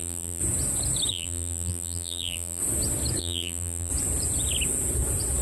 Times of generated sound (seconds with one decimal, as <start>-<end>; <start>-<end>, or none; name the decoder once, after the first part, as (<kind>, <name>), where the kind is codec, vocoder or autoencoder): 0.0-0.4 (vocoder, BigVGAN v2); 1.1-2.6; 3.2-3.9